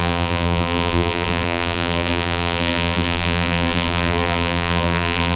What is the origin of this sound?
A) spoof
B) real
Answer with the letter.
A